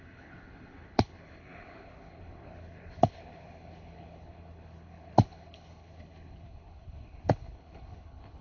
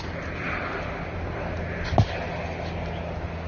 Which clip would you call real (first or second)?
second